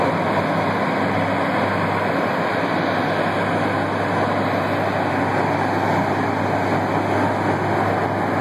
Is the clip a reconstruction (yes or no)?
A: no